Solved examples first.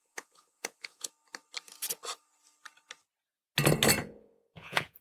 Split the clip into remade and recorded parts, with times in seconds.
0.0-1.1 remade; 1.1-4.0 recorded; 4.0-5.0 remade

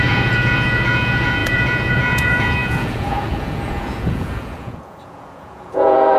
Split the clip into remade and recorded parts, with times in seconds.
0.0-6.2 remade